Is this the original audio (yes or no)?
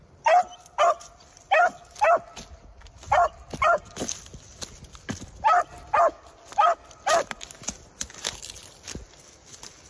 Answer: yes